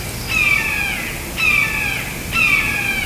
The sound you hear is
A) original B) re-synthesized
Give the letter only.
A